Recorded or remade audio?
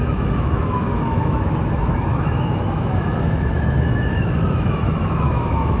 remade